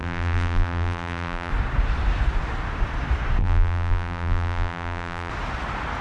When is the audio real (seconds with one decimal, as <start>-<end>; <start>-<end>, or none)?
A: 1.5-3.4; 5.3-6.0